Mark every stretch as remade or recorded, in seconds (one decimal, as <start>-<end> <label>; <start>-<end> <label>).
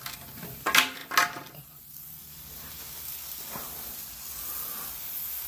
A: 0.0-5.5 recorded